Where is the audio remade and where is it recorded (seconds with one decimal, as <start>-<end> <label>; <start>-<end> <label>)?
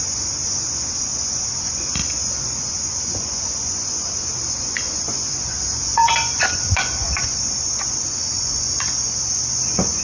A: 0.0-10.0 remade